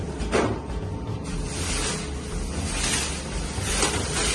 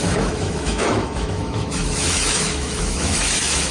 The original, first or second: first